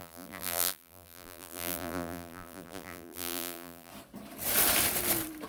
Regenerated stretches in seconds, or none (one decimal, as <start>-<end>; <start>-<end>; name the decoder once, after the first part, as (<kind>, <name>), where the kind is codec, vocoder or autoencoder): 0.0-3.9 (vocoder, BigVGAN v2)